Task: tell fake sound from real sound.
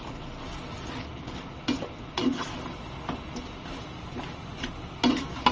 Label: real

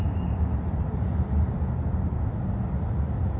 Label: real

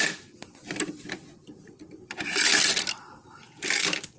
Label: real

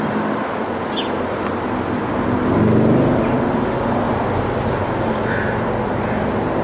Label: real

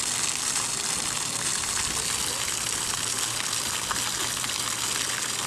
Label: real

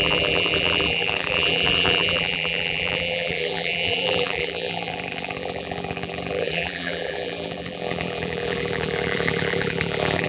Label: fake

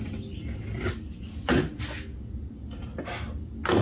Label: real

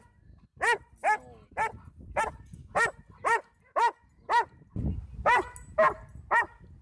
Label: real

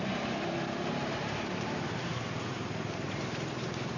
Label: fake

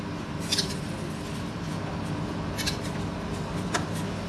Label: real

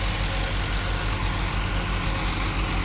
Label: real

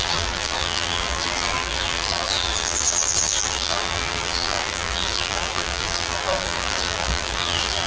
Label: fake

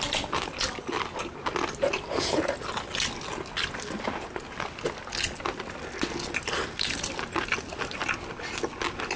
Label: real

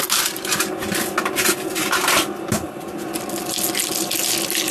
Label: real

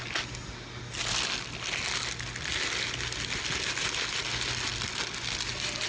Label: real